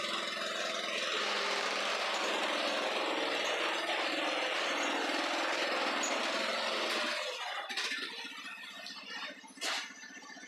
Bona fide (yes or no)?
yes